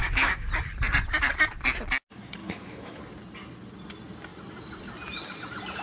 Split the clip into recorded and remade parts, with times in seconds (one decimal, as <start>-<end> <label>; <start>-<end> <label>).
0.0-0.5 remade; 0.5-2.4 recorded; 2.4-3.0 remade; 3.0-5.8 recorded